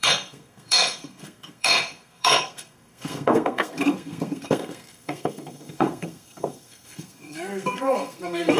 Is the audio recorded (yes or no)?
no